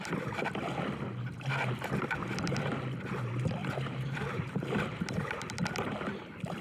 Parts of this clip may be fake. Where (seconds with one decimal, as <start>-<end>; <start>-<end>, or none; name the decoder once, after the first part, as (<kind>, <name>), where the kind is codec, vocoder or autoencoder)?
3.6-4.8 (vocoder, BigVGAN v2)